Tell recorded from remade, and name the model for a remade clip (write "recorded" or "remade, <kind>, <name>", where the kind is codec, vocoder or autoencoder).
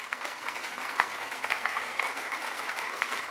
remade, codec, SNAC